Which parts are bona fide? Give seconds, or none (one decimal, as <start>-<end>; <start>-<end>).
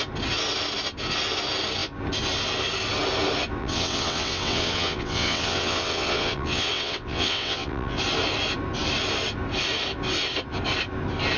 0.0-3.6; 8.0-11.4